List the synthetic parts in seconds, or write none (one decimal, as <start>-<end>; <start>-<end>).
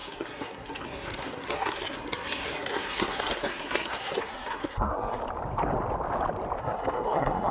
0.0-5.2; 6.6-7.5